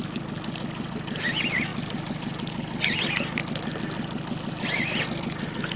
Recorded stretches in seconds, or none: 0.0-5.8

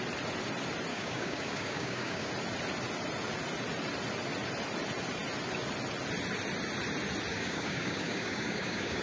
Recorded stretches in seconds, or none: 0.0-0.9; 2.3-7.3

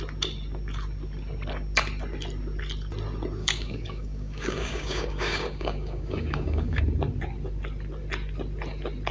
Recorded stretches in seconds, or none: 0.0-3.4; 6.8-9.1

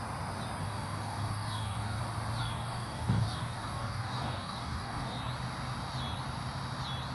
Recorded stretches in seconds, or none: 0.0-0.6; 2.0-2.4; 5.2-7.1

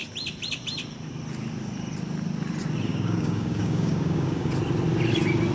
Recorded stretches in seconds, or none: 0.0-2.9; 4.5-5.5